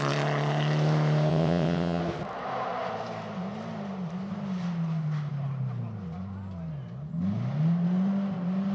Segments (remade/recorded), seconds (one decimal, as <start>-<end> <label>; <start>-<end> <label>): 0.0-1.3 recorded; 1.3-2.0 remade; 2.0-8.7 recorded